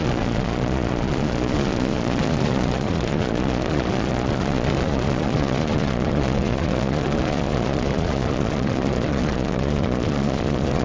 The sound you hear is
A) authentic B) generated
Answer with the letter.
B